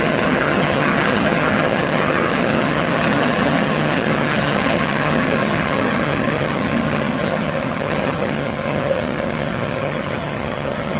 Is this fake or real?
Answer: fake